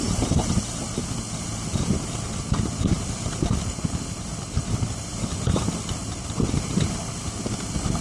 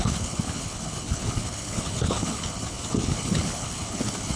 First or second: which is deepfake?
second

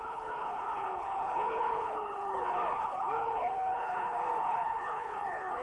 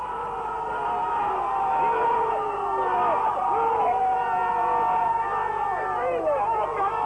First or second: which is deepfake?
first